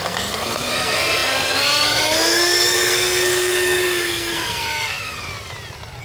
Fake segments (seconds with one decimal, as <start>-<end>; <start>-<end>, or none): 0.0-5.3